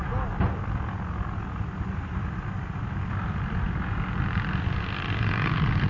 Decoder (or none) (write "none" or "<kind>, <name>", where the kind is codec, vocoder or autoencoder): none